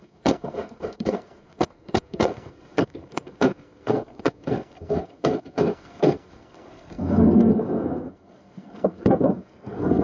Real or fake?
fake